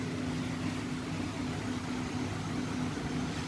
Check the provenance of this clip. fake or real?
real